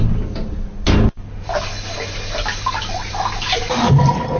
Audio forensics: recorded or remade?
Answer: recorded